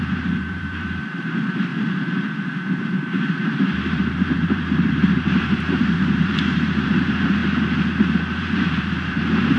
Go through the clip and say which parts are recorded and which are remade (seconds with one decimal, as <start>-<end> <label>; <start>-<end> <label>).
0.0-1.7 remade; 1.7-2.8 recorded; 2.8-7.4 remade; 7.4-8.4 recorded; 8.4-9.6 remade